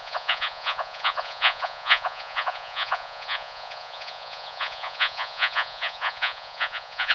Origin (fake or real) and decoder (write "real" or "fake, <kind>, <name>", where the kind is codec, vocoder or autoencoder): fake, vocoder, Vocos